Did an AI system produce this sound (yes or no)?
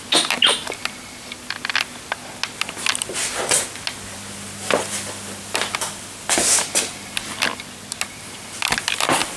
no